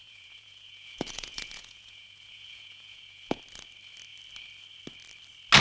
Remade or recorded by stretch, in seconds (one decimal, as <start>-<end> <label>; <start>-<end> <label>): 0.0-3.4 remade; 3.4-5.6 recorded